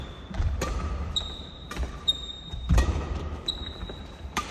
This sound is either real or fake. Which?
fake